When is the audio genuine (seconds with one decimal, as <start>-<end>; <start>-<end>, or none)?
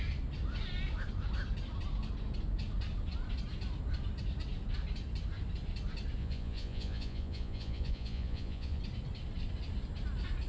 0.0-6.2; 8.8-10.5